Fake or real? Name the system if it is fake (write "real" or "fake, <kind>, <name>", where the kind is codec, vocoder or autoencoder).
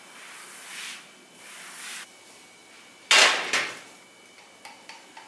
real